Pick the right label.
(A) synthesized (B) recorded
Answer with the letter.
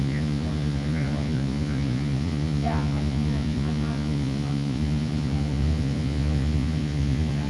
A